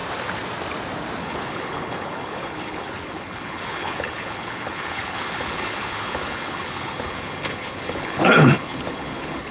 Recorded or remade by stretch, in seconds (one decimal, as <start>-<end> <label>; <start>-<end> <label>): 0.0-1.2 recorded; 1.2-9.5 remade